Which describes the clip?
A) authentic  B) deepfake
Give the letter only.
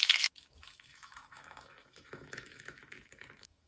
B